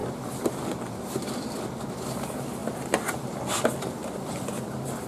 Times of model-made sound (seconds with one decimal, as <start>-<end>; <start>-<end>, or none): 0.0-1.9; 4.0-5.1